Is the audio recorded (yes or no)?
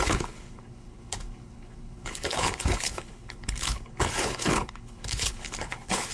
no